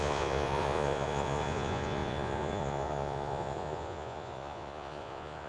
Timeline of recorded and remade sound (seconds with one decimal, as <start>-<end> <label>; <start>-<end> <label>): 0.0-5.5 remade